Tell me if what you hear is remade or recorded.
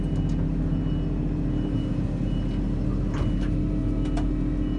recorded